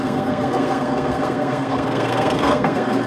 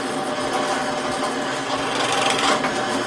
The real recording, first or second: second